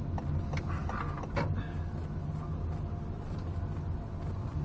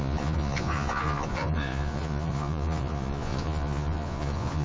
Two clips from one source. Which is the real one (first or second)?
first